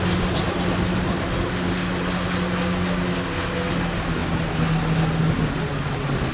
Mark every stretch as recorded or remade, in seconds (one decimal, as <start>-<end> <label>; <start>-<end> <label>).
0.0-6.3 recorded